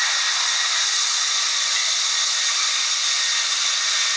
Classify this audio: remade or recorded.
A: recorded